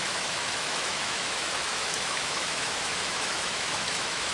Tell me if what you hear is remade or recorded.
remade